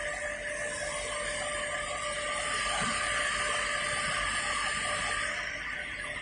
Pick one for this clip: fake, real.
real